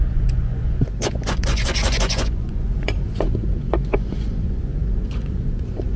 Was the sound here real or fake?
fake